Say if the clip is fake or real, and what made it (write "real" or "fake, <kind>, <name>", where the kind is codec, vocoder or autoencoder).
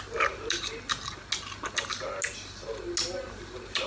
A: real